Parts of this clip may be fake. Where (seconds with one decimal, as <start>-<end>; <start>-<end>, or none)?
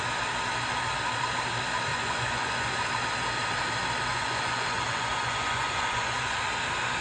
1.9-2.7; 4.1-6.4